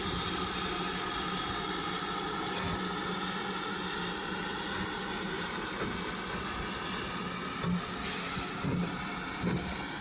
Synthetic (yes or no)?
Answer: no